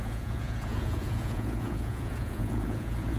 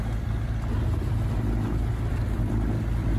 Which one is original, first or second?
second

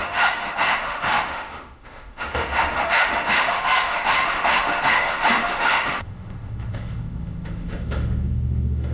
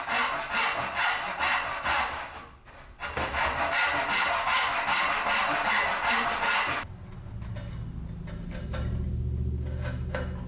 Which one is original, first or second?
second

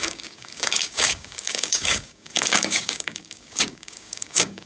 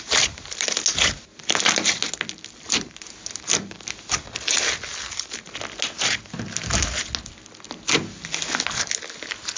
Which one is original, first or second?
second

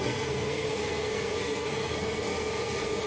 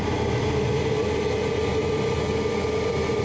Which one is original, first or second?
second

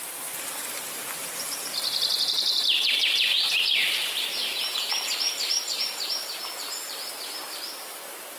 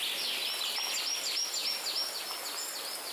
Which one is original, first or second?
second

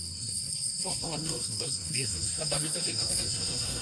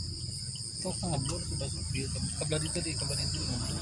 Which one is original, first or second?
second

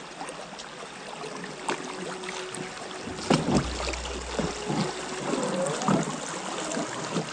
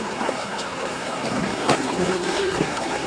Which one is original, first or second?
first